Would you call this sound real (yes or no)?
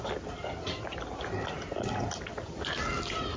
yes